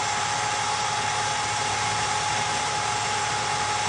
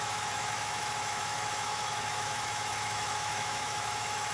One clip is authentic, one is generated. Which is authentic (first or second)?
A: first